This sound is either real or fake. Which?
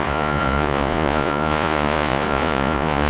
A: fake